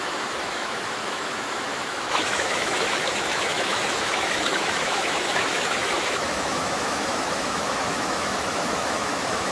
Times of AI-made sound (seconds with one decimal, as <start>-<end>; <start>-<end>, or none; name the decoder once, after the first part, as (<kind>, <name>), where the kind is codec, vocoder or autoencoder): 0.0-9.5 (autoencoder, DAC-VAE)